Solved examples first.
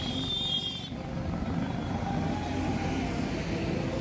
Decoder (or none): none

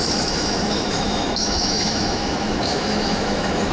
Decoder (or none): autoencoder, DAC-VAE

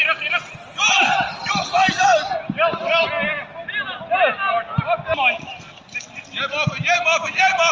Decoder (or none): none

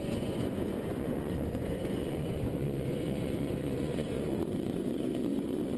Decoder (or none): vocoder, Vocos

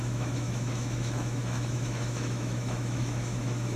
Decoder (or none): autoencoder, DAC-VAE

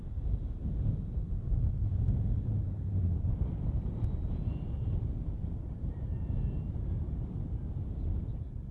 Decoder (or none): none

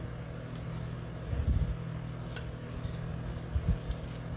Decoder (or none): none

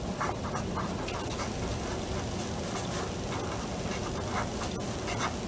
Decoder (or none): none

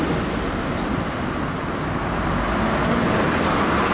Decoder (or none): none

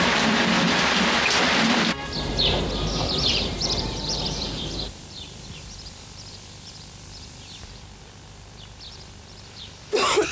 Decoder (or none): vocoder, BigVGAN v2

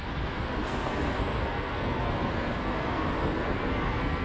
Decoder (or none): codec, SNAC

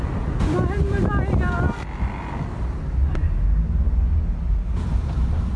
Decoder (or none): none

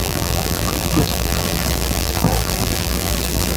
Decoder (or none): vocoder, BigVGAN v2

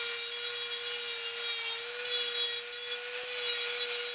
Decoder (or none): none